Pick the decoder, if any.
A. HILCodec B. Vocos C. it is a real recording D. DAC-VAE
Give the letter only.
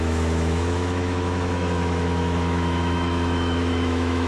D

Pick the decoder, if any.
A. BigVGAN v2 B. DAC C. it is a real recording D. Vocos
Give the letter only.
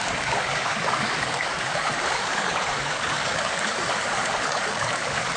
B